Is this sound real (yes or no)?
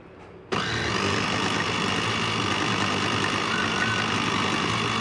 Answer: yes